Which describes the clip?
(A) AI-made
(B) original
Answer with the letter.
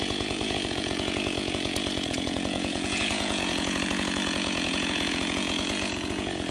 A